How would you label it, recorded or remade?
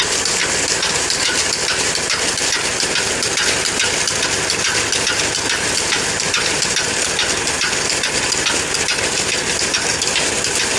recorded